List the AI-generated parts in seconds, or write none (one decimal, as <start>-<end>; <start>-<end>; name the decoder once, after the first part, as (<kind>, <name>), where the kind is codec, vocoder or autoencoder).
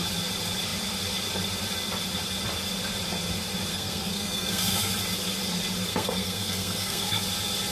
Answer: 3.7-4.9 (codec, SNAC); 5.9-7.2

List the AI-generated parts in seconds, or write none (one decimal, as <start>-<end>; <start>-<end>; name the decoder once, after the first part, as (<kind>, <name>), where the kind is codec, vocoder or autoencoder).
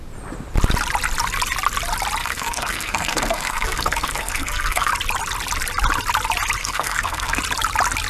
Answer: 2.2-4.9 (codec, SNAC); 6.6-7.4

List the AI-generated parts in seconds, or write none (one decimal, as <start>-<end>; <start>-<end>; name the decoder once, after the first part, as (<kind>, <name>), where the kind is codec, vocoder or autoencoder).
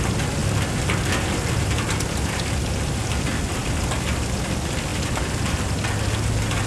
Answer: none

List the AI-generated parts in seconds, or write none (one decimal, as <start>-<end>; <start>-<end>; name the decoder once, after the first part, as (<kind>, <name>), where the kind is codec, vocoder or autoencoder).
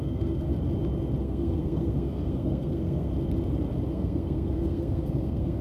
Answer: 0.0-0.5 (codec, SNAC); 1.2-3.1; 3.9-5.6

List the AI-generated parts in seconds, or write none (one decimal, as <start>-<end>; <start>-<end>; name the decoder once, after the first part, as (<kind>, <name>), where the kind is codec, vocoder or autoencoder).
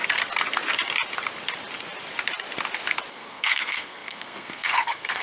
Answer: 3.1-5.2 (codec, SNAC)